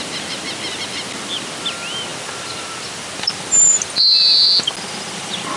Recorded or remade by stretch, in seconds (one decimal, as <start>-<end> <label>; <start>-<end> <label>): 0.0-5.6 recorded